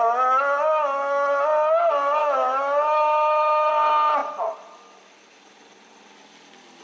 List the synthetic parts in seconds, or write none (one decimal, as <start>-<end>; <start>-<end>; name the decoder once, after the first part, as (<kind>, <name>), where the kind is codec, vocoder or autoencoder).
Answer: 2.2-3.7 (autoencoder, DAC-VAE)